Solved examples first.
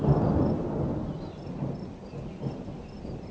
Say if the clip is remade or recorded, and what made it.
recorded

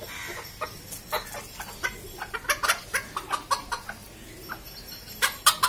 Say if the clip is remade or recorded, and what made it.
recorded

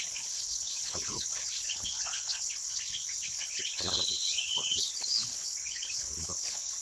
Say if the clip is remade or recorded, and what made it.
remade, codec, HILCodec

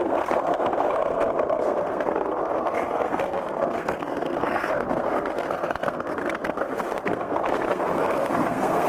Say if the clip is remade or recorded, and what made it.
remade, codec, SNAC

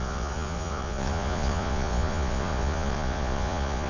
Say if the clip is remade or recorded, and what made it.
remade, vocoder, Vocos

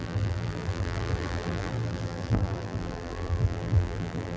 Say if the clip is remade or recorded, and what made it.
remade, vocoder, BigVGAN v2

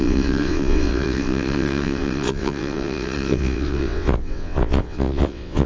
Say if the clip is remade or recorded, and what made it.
remade, vocoder, WaveNeXt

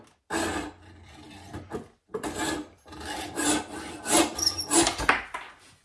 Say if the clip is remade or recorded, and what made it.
recorded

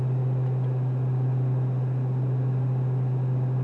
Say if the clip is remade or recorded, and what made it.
recorded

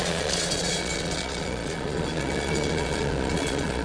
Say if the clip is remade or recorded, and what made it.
remade, vocoder, Vocos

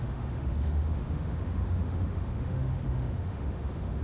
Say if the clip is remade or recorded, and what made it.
remade, autoencoder, DAC-VAE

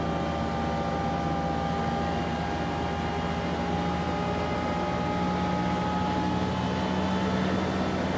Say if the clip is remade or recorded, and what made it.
recorded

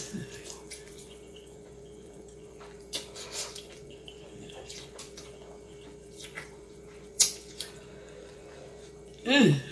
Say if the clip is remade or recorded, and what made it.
remade, vocoder, Vocos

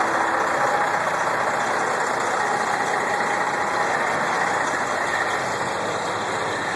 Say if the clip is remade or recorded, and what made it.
recorded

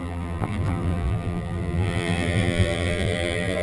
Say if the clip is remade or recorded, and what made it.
remade, vocoder, BigVGAN v2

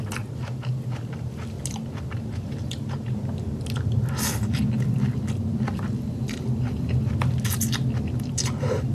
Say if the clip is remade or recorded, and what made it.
recorded